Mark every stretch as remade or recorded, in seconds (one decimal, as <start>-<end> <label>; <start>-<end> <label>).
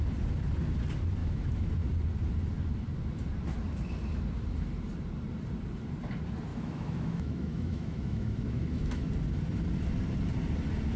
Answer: 0.0-1.2 recorded; 1.2-1.7 remade; 1.7-6.5 recorded; 6.5-9.1 remade; 9.1-11.0 recorded